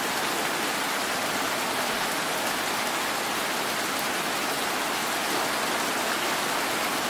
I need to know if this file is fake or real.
real